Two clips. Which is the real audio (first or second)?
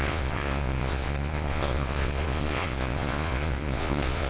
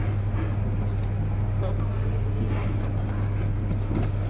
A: second